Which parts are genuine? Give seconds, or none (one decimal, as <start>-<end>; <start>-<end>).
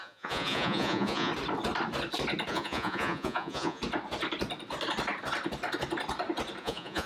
1.3-2.5; 3.8-6.6